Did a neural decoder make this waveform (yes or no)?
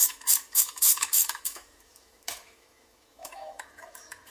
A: yes